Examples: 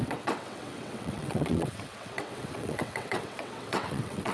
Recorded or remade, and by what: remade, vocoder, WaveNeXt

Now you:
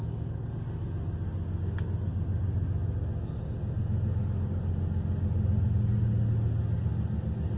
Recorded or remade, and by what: recorded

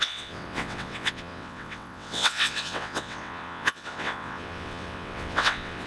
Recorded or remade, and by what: remade, vocoder, WaveNeXt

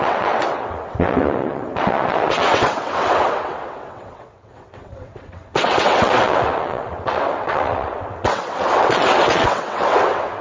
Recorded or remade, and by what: remade, vocoder, WaveNeXt